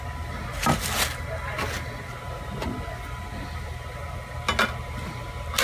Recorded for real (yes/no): yes